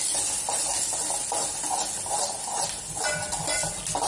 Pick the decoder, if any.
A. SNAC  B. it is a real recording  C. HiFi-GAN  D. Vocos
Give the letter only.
B